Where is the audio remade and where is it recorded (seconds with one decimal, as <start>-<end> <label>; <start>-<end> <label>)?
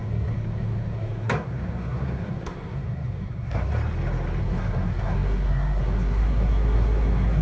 0.0-3.7 remade; 3.7-4.4 recorded; 4.4-7.4 remade